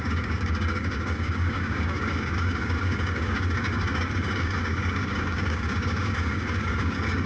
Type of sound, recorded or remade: remade